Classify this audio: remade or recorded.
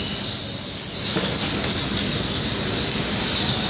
recorded